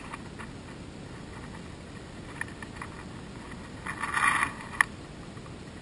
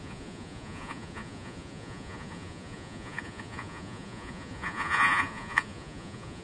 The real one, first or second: first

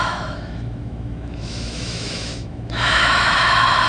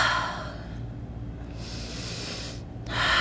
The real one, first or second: second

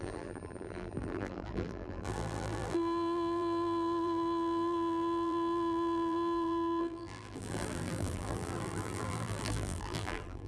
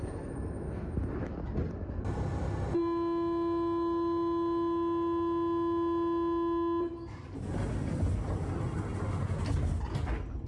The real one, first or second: second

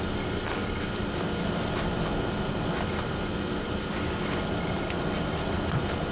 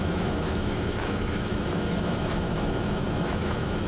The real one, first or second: first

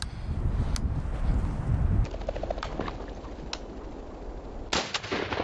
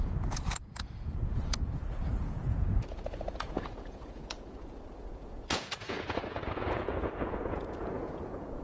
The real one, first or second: first